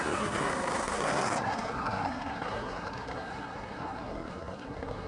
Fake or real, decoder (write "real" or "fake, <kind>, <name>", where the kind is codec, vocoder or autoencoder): fake, codec, SNAC